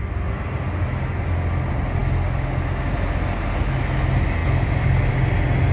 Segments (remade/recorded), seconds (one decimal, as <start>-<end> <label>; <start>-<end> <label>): 0.0-5.7 recorded